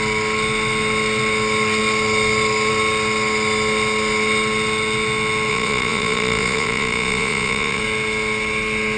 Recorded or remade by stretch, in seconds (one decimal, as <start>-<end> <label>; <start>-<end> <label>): 0.0-5.5 recorded; 5.5-7.8 remade; 7.8-9.0 recorded